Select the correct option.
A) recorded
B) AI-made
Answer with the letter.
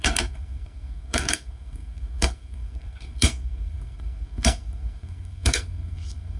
B